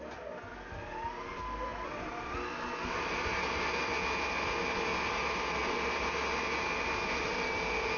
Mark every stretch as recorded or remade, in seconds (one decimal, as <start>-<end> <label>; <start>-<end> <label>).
0.0-8.0 recorded